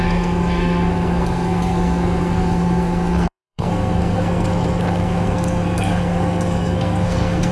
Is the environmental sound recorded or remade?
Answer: remade